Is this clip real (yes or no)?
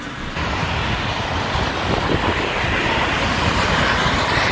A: yes